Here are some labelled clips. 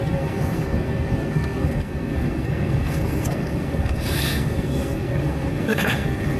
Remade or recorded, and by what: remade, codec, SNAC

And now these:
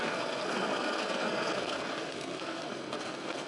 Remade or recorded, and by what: remade, codec, SNAC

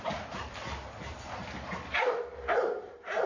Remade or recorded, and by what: recorded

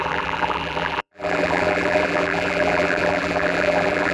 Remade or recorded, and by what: remade, vocoder, BigVGAN v2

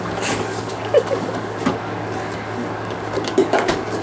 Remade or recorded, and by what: remade, codec, DAC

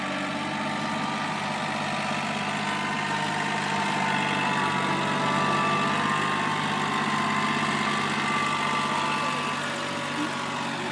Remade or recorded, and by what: recorded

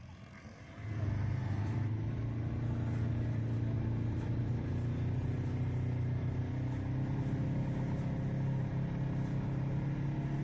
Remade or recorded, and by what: recorded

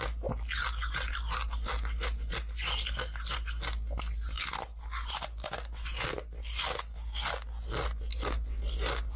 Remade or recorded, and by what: recorded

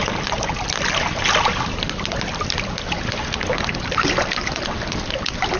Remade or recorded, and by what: recorded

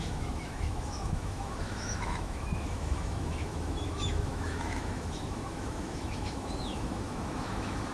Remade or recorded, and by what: remade, autoencoder, DAC-VAE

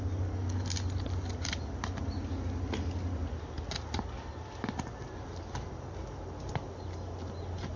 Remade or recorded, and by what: recorded